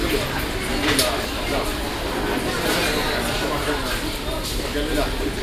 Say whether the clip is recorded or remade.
recorded